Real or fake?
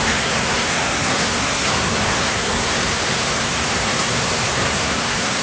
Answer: fake